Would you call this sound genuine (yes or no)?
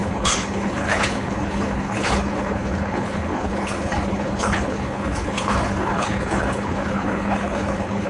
no